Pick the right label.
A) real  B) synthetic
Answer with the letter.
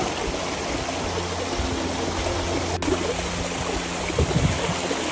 A